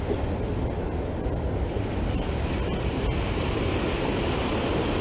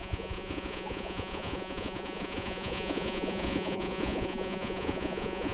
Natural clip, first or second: first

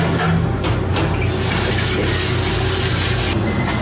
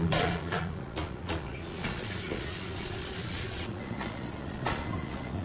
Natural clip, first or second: first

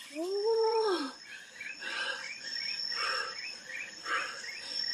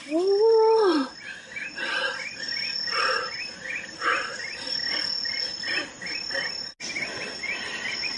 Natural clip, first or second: second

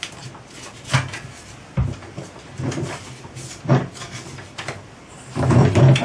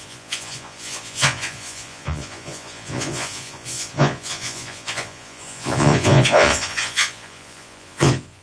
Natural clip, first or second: first